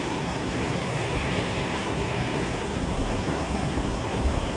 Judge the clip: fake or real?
fake